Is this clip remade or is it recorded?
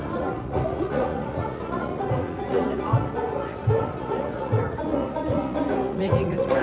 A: remade